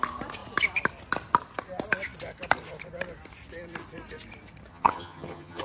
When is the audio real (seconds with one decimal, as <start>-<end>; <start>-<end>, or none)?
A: 0.0-4.7